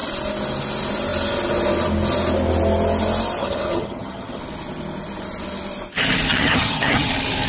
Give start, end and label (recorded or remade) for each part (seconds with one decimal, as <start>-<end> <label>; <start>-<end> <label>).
0.0-3.4 recorded; 3.4-4.4 remade; 4.4-6.3 recorded; 6.3-7.1 remade; 7.1-7.5 recorded